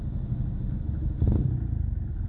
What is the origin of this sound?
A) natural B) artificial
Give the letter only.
A